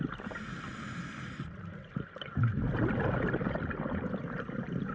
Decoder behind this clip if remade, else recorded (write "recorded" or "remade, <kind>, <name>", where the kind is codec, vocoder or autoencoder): recorded